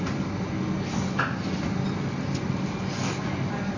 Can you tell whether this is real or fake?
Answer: real